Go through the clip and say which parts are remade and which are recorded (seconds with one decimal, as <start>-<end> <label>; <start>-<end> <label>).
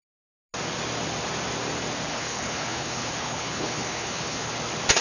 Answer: 0.0-2.1 recorded; 2.1-4.5 remade; 4.5-5.0 recorded